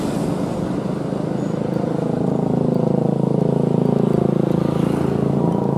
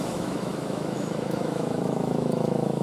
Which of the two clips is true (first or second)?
first